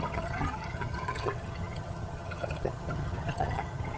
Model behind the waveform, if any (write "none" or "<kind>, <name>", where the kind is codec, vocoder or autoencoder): vocoder, HiFi-GAN